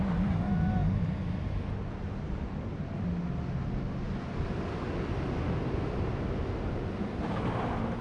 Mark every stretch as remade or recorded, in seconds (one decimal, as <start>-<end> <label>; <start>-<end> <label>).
0.0-8.0 recorded